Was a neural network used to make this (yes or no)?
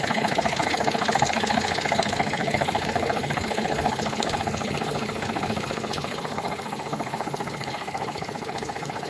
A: yes